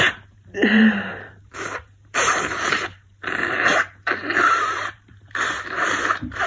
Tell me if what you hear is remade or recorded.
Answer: remade